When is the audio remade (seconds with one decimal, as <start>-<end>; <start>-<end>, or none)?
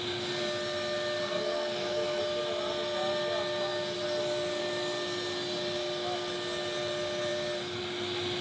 1.2-2.2